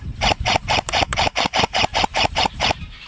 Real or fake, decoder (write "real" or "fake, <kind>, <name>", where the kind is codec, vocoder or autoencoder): fake, vocoder, BigVGAN v2